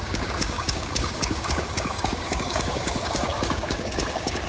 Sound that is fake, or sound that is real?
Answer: fake